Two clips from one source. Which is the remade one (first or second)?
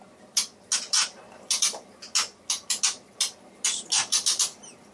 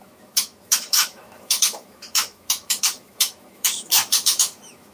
second